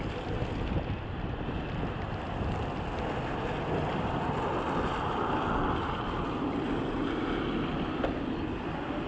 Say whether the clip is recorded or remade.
recorded